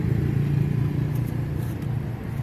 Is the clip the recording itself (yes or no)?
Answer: yes